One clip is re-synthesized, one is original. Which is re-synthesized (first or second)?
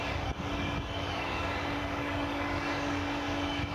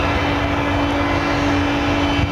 first